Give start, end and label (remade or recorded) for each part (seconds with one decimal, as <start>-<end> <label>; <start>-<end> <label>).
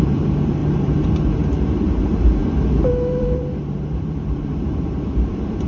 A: 0.0-2.4 remade; 2.4-2.9 recorded; 2.9-5.7 remade